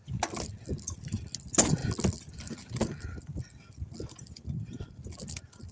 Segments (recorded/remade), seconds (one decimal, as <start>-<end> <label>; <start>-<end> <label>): 0.0-5.7 recorded